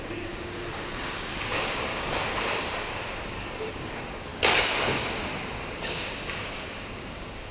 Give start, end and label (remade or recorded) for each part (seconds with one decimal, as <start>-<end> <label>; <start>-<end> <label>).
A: 0.0-2.3 remade; 2.3-2.8 recorded; 2.8-4.3 remade; 4.3-5.6 recorded; 5.6-7.5 remade